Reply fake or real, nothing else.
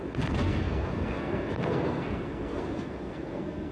fake